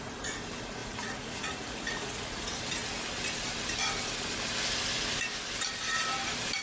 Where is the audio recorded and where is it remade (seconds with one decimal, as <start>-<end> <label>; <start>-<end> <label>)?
0.0-0.8 recorded; 0.8-2.4 remade; 2.4-6.6 recorded